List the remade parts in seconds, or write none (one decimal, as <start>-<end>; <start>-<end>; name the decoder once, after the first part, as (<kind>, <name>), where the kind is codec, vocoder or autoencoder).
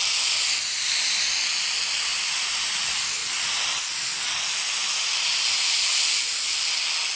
2.1-2.7 (vocoder, BigVGAN v2); 5.3-5.9